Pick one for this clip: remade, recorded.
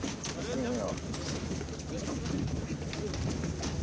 recorded